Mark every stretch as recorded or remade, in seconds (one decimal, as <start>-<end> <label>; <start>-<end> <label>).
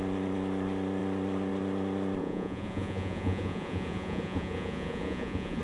0.0-2.2 recorded; 2.2-5.6 remade